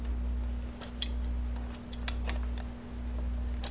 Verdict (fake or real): real